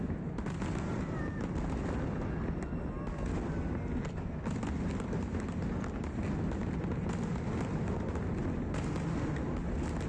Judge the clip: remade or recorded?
recorded